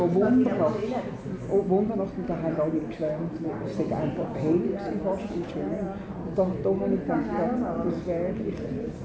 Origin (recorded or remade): recorded